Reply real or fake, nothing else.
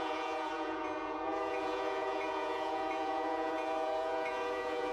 fake